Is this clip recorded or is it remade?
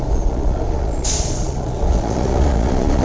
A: remade